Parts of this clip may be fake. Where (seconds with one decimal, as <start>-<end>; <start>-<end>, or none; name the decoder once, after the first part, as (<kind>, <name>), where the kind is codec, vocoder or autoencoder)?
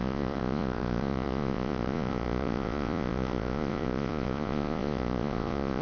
0.0-5.8 (vocoder, Vocos)